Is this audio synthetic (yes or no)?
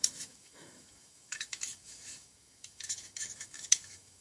yes